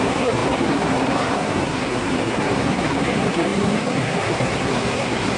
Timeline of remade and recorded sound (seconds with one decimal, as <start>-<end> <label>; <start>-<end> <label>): 0.0-5.4 remade